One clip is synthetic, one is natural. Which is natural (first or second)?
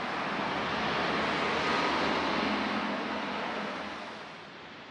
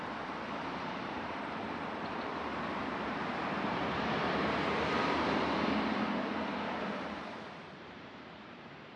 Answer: first